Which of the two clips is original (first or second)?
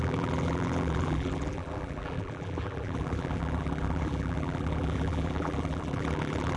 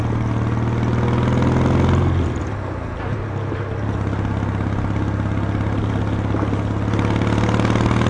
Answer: second